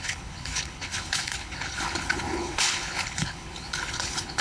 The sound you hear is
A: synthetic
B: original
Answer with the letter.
A